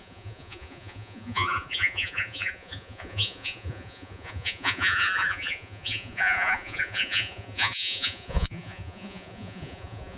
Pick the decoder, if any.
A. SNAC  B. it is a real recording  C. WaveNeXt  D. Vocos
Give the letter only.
D